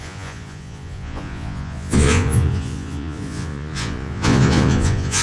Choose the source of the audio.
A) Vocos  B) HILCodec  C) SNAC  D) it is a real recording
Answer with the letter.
A